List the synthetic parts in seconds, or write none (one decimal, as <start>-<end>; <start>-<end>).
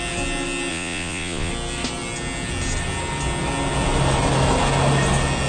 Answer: 0.7-1.5